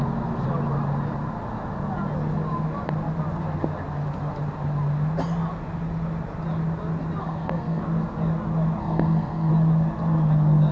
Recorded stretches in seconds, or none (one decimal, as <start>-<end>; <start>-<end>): 0.0-7.2; 7.8-8.8; 9.5-10.7